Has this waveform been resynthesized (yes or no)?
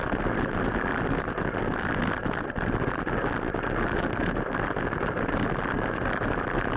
no